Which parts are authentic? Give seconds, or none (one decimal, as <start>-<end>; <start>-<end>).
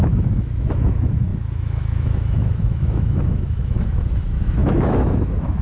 none